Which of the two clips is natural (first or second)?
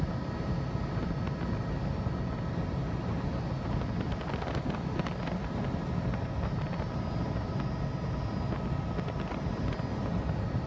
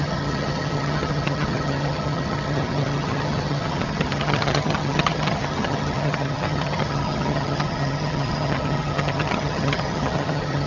first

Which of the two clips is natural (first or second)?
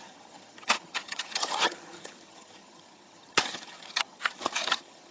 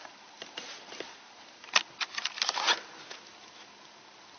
second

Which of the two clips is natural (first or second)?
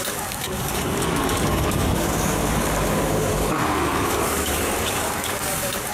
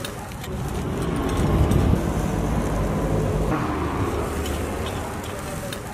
second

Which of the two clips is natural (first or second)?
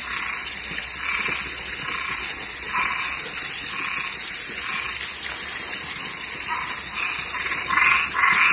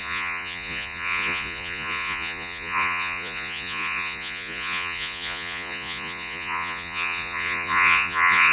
first